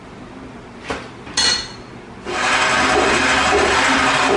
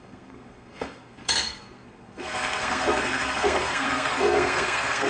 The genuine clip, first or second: first